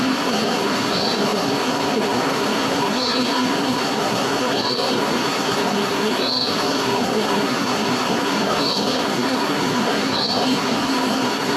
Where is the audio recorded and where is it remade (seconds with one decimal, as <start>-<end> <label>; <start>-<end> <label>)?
0.0-11.6 remade